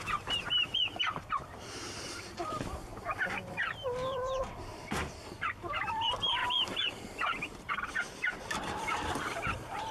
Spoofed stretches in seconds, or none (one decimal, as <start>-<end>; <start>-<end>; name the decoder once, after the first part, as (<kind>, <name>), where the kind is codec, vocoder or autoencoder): 0.0-2.9 (vocoder, BigVGAN v2); 3.7-9.9